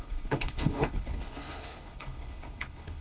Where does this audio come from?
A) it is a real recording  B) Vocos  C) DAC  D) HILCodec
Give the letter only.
D